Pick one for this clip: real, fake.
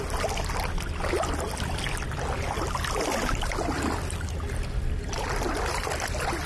real